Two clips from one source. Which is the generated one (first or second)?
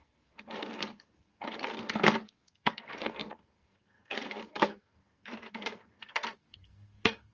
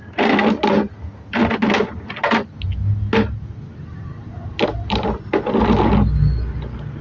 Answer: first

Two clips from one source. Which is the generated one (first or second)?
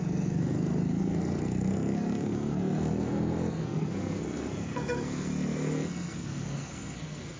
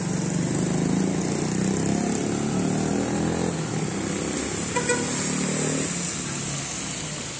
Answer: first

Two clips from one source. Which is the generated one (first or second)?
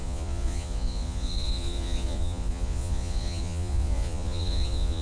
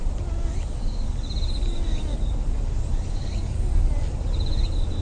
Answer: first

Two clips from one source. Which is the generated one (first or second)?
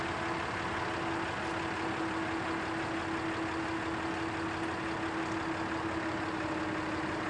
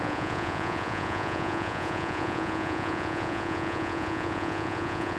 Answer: second